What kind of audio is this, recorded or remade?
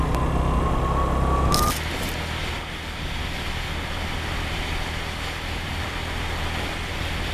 recorded